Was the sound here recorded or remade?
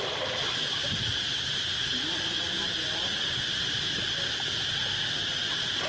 recorded